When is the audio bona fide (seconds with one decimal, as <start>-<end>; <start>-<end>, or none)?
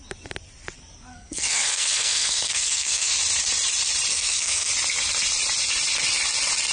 0.0-1.1; 3.1-4.1; 4.7-6.7